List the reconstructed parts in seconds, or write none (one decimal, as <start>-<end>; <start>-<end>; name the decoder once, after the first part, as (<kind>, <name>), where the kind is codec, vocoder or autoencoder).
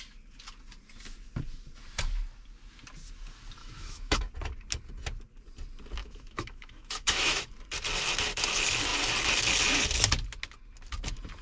3.6-4.2 (autoencoder, DAC-VAE); 6.0-7.5